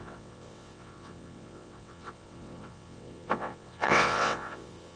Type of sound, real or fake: fake